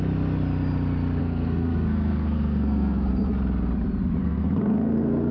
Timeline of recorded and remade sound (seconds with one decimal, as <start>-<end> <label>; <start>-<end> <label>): 0.0-1.2 recorded; 1.2-3.1 remade; 3.1-4.2 recorded; 4.2-5.3 remade

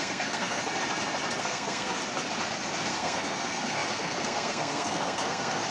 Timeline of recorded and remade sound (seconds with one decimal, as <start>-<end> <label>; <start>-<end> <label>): 0.0-0.6 remade; 0.6-1.4 recorded; 1.4-2.0 remade; 2.0-2.9 recorded; 2.9-5.7 remade

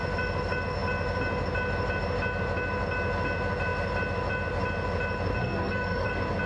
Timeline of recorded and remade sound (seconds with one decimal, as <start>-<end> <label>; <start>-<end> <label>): 0.0-5.4 recorded; 5.4-6.1 remade; 6.1-6.5 recorded

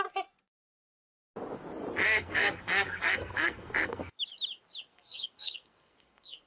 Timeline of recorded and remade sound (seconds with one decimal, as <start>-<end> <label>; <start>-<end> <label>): 0.0-2.0 recorded; 2.0-4.2 remade; 4.2-4.9 recorded; 4.9-6.5 remade

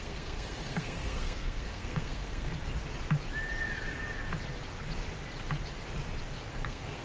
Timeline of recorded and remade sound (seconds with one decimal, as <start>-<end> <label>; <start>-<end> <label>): 0.0-2.5 remade; 2.5-6.5 recorded; 6.5-7.0 remade

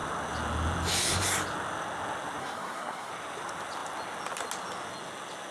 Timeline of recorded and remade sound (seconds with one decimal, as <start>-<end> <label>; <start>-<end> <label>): 0.0-2.4 recorded; 2.4-3.1 remade; 3.1-5.5 recorded

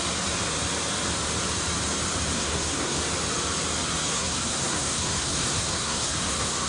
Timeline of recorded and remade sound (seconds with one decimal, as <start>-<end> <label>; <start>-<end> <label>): 0.0-2.3 recorded; 2.3-3.0 remade; 3.0-4.1 recorded; 4.1-6.7 remade

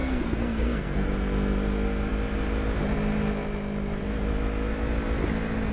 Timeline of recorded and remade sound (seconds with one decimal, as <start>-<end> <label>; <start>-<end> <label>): 0.0-1.1 remade; 1.1-5.7 recorded